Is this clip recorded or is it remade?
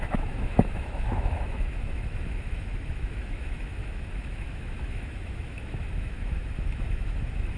remade